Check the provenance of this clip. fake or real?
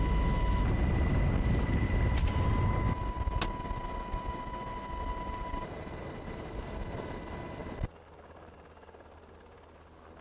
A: real